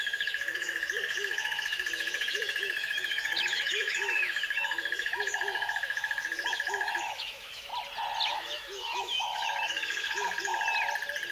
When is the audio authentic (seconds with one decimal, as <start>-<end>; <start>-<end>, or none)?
7.7-8.3; 10.5-11.3